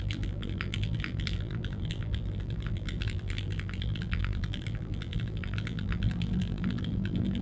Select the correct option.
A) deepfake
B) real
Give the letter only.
A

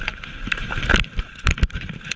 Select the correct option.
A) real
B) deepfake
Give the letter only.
B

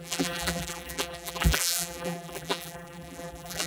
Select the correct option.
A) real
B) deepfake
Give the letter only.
B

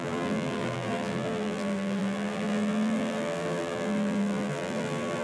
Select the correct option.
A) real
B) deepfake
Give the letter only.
B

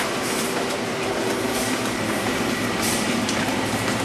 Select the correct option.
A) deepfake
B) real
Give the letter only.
A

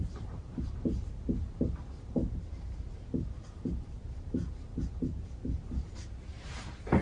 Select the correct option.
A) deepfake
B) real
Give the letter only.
A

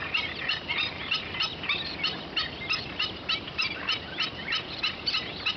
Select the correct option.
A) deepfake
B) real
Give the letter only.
A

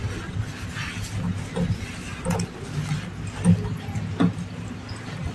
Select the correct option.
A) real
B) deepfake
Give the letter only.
A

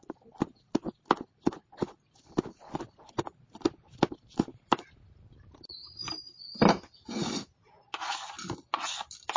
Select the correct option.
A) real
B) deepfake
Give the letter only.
A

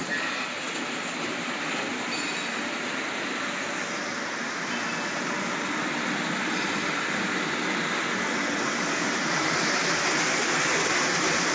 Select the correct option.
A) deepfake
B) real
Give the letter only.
B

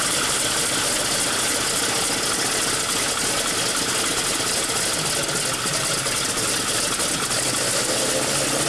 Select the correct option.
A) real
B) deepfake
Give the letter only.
A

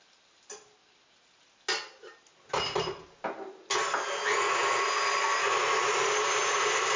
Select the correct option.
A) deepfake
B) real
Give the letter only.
B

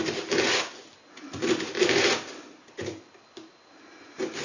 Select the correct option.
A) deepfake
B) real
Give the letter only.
B